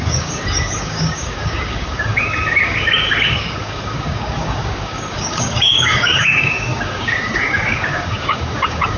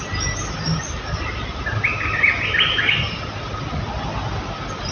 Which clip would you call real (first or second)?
second